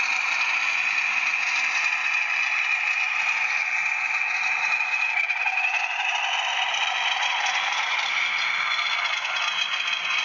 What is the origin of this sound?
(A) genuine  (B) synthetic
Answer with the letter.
A